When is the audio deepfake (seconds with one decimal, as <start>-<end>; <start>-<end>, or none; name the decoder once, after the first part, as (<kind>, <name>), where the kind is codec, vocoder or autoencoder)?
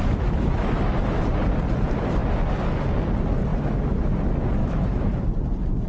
0.0-1.2 (autoencoder, DAC-VAE); 3.5-4.1; 4.6-5.2